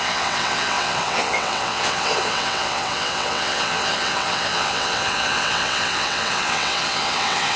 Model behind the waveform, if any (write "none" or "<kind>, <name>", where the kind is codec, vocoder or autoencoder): vocoder, WaveNeXt